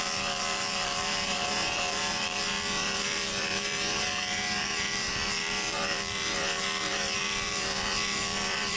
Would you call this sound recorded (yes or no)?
no